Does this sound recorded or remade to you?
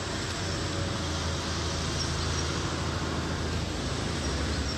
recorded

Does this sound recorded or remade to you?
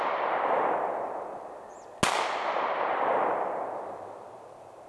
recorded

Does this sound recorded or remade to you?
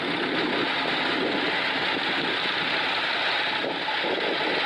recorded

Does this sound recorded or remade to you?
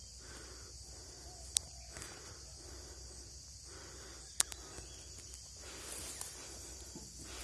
recorded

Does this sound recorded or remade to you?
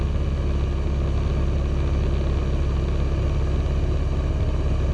recorded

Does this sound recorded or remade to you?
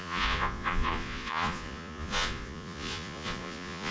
remade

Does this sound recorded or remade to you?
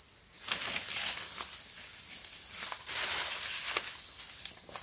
recorded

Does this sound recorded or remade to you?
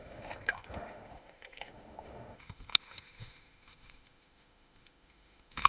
remade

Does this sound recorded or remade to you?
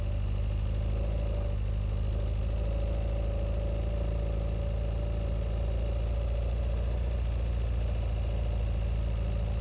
recorded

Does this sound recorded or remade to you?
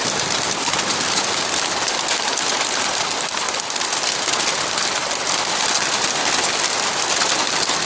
recorded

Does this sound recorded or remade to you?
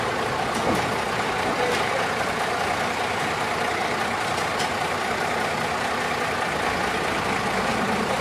recorded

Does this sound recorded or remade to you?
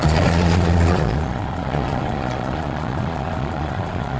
remade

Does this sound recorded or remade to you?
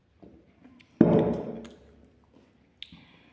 recorded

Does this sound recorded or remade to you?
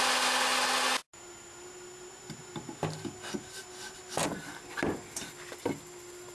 recorded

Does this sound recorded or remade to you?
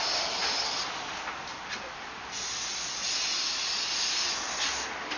recorded